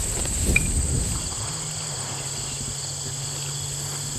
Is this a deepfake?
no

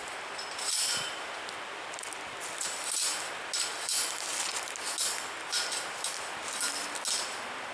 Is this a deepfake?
no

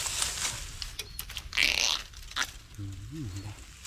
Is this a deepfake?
no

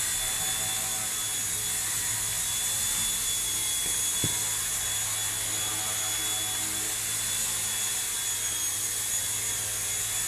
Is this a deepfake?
no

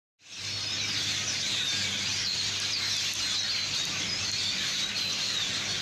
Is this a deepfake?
no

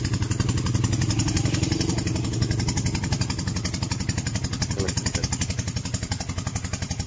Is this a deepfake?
no